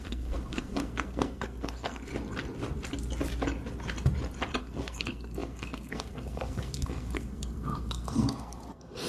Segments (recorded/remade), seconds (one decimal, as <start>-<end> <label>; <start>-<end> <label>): 0.0-2.1 remade; 2.1-4.6 recorded; 4.6-9.1 remade

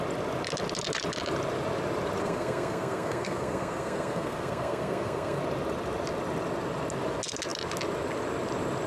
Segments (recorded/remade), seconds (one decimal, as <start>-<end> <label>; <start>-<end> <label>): 0.0-2.2 recorded; 2.2-5.4 remade; 5.4-8.9 recorded

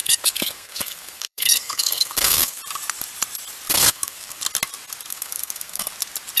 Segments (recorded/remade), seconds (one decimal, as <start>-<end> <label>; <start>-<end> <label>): 0.0-2.6 remade; 2.6-3.7 recorded; 3.7-4.4 remade; 4.4-5.1 recorded; 5.1-5.9 remade; 5.9-6.4 recorded

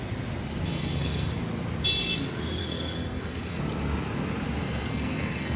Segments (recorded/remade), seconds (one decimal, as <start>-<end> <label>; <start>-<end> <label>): 0.0-0.7 recorded; 0.7-1.3 remade; 1.3-2.6 recorded; 2.6-3.6 remade; 3.6-4.6 recorded; 4.6-5.6 remade

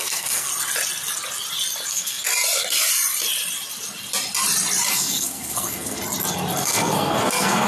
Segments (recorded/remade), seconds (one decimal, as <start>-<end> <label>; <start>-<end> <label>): 0.0-0.5 remade; 0.5-1.9 recorded; 1.9-2.3 remade; 2.3-4.9 recorded; 4.9-6.0 remade; 6.0-6.6 recorded; 6.6-7.7 remade

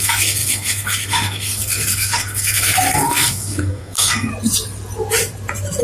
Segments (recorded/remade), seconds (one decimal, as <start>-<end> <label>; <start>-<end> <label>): 0.0-4.3 remade; 4.3-5.8 recorded

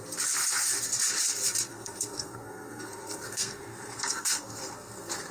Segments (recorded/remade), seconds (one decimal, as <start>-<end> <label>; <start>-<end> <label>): 0.0-1.7 recorded; 1.7-5.3 remade